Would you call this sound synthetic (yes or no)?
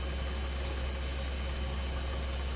no